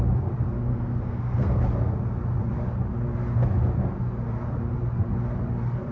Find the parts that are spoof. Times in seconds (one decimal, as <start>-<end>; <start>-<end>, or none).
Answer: 0.7-1.6